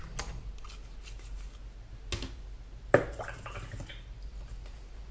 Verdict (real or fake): real